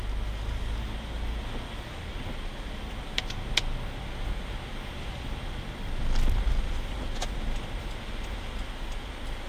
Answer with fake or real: real